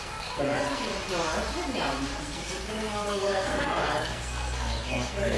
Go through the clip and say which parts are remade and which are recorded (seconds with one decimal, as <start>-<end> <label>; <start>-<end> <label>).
0.0-0.9 remade; 0.9-2.2 recorded; 2.2-5.4 remade